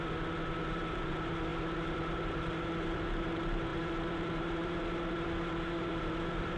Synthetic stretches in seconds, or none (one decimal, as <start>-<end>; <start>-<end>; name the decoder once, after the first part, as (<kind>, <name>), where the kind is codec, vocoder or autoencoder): 0.0-6.6 (vocoder, BigVGAN v2)